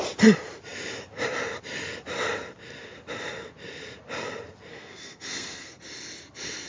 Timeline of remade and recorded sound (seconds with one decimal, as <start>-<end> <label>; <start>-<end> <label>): 0.0-4.7 recorded; 4.7-5.8 remade; 5.8-6.7 recorded